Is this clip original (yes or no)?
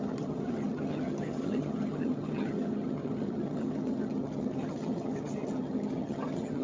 no